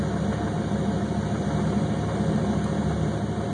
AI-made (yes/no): no